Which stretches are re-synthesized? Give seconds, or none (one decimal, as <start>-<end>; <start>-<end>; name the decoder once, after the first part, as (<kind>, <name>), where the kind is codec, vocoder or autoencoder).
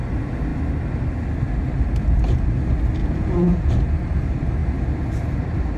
3.0-3.7 (vocoder, Vocos)